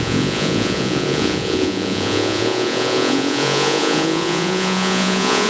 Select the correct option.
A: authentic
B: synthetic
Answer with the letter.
B